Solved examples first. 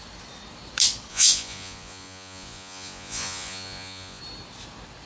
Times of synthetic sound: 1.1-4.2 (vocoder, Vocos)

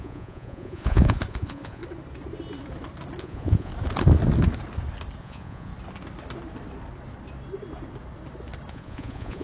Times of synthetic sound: 0.0-1.8 (vocoder, Vocos); 3.2-3.7; 5.2-5.7; 8.7-9.4

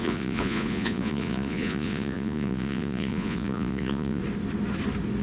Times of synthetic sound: 0.0-4.2 (vocoder, Vocos)

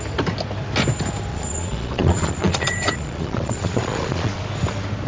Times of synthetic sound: 1.3-4.4 (vocoder, Vocos)

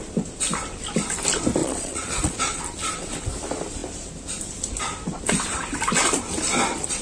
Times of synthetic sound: 1.6-2.6 (vocoder, Vocos)

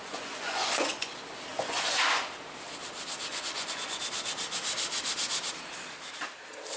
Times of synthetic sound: 0.0-1.1 (vocoder, Vocos); 1.5-2.3; 3.3-4.0

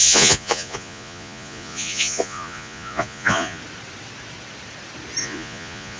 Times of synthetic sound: 0.0-3.6 (vocoder, Vocos); 5.2-6.0

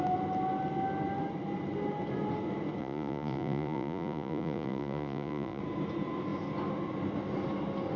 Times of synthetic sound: 2.8-5.6 (vocoder, Vocos)